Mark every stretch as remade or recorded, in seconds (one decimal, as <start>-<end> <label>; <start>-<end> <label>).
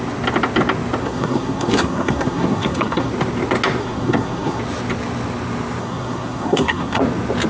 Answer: 0.0-1.0 recorded; 1.0-3.1 remade; 3.1-3.8 recorded; 3.8-4.6 remade; 4.6-5.8 recorded; 5.8-7.0 remade; 7.0-7.5 recorded